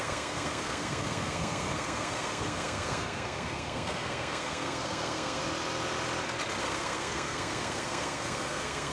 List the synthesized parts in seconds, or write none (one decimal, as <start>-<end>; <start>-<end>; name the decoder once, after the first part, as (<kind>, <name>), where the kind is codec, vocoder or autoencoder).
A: 0.0-5.4 (codec, SNAC); 6.6-8.9